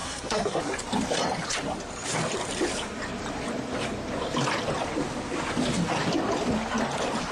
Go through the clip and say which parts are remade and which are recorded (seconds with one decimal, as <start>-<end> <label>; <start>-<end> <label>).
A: 0.0-0.6 remade; 0.6-7.3 recorded